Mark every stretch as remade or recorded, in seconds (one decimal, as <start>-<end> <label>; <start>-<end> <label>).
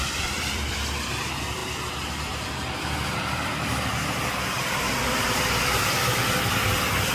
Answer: 0.0-7.1 remade